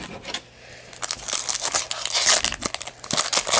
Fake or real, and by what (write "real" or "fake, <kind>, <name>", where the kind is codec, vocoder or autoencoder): real